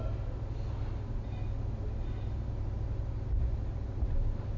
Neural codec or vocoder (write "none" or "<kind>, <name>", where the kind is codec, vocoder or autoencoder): none